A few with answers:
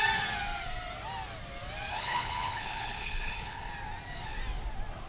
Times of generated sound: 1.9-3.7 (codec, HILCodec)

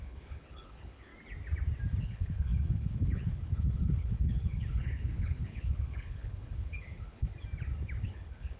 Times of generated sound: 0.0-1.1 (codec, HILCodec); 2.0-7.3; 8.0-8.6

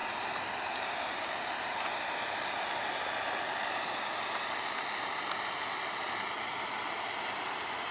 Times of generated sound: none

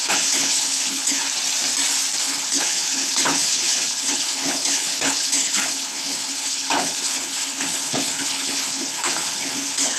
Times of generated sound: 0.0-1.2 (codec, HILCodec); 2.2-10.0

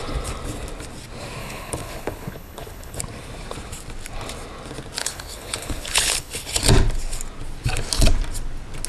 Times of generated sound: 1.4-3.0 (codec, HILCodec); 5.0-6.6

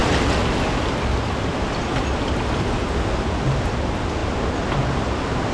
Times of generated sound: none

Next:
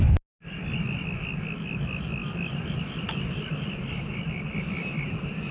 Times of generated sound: none